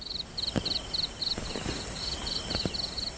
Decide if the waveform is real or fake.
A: real